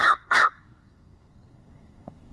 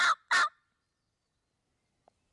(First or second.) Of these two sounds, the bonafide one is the second